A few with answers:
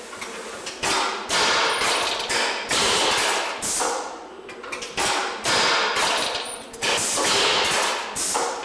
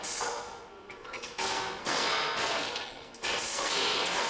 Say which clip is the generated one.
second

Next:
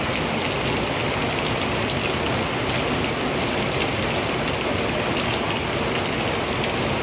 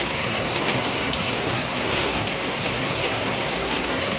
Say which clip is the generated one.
second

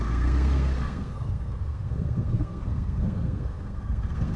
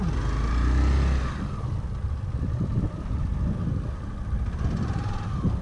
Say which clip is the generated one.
first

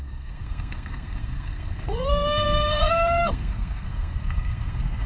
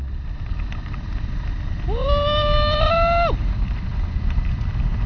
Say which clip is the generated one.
first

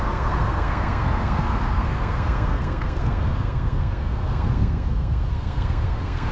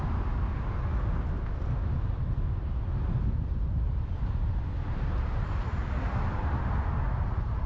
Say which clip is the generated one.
first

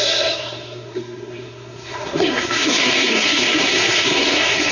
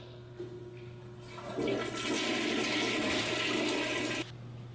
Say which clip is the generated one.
first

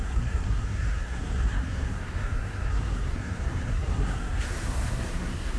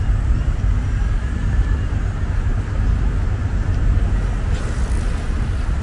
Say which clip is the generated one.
first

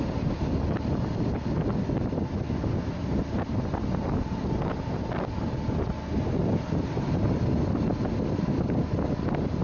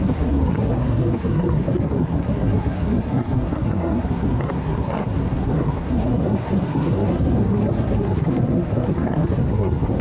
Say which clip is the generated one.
second